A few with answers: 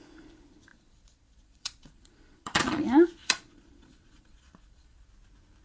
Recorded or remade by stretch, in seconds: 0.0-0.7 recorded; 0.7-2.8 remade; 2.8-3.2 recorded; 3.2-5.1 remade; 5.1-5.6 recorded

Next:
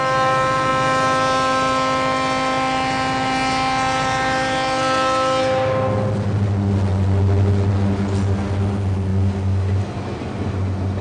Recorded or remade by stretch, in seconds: 0.0-11.0 recorded

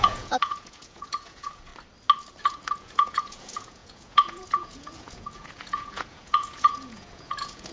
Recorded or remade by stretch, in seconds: 0.0-1.7 remade; 1.7-2.4 recorded; 2.4-7.7 remade

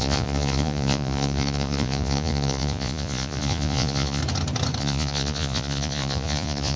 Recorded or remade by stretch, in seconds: 0.0-4.2 remade; 4.2-4.8 recorded; 4.8-6.8 remade

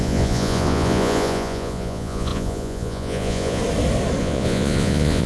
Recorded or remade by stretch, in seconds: 0.0-3.6 remade; 3.6-4.2 recorded; 4.2-5.3 remade

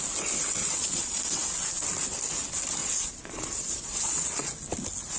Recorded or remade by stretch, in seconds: 0.0-0.6 recorded; 0.6-1.2 remade; 1.2-2.8 recorded; 2.8-4.5 remade; 4.5-5.2 recorded

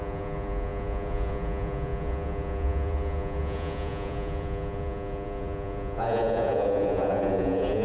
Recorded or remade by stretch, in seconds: 0.0-7.8 remade